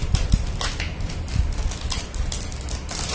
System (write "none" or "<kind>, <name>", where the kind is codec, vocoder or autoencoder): none